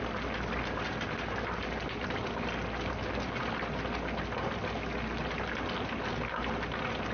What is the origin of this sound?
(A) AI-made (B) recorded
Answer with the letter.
B